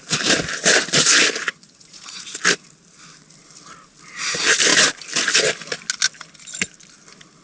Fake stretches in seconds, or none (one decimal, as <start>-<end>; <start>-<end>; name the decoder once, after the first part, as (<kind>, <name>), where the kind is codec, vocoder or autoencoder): 1.4-2.4 (vocoder, Vocos)